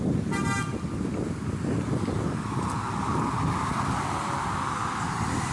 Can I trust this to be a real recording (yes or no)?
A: yes